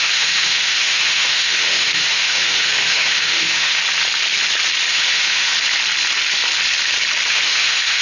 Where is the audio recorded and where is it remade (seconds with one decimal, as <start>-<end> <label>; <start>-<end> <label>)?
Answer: 0.0-3.8 remade; 3.8-4.9 recorded; 4.9-5.5 remade; 5.5-7.3 recorded; 7.3-8.0 remade